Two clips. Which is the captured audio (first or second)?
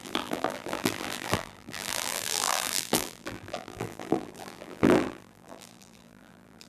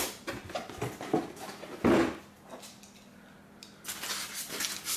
second